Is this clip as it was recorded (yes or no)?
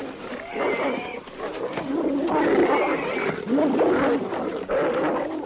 yes